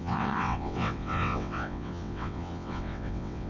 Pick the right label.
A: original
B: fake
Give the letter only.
B